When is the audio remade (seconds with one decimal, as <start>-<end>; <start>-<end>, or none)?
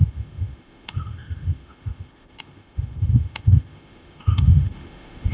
0.0-5.3